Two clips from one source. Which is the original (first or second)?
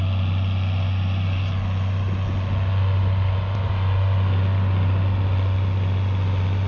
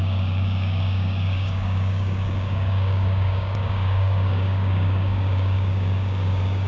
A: first